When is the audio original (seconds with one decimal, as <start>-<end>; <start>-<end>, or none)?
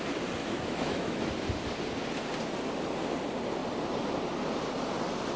0.0-0.4; 1.3-5.4